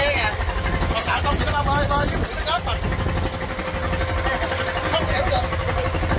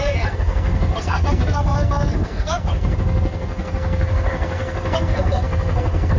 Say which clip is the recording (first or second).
first